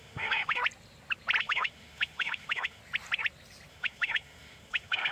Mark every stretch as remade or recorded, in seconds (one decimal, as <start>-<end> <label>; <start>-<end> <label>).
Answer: 0.0-0.6 remade; 0.6-1.4 recorded; 1.4-2.8 remade; 2.8-3.7 recorded; 3.7-5.1 remade